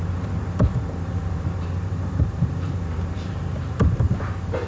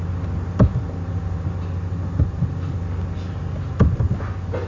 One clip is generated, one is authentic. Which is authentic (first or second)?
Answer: second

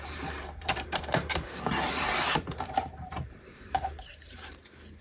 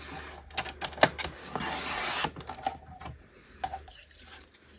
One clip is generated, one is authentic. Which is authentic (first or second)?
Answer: second